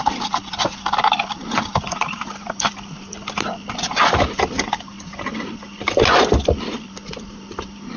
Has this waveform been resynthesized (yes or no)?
no